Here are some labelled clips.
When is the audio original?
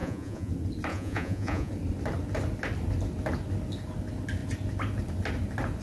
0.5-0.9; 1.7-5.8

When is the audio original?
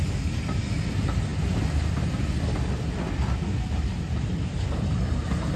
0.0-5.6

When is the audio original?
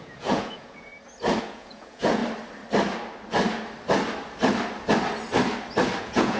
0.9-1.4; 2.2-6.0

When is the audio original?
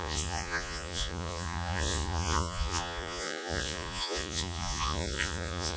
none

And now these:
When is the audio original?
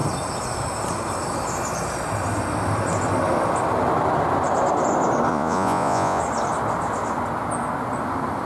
0.0-5.3; 6.2-8.5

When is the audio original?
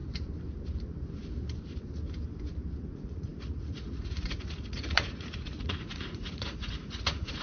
0.0-2.8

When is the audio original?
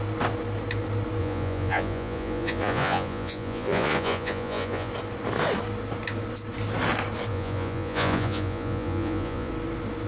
0.0-1.2; 4.9-7.3; 9.5-10.1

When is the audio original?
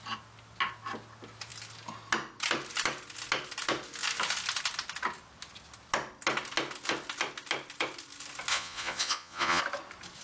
0.0-8.5; 9.6-10.2